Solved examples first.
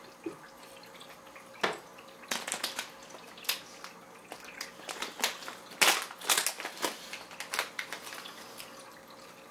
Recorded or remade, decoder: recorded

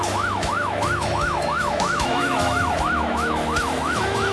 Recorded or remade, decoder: remade, autoencoder, DAC-VAE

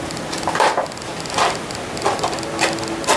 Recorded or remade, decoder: recorded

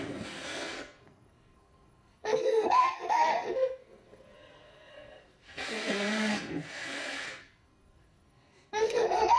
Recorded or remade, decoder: remade, codec, SNAC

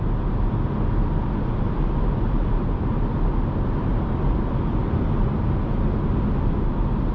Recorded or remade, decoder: recorded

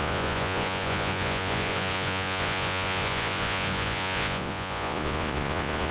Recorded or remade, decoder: remade, vocoder, Vocos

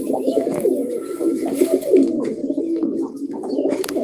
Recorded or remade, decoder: remade, codec, DAC